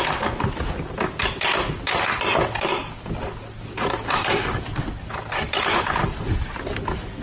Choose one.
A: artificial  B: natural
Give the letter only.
B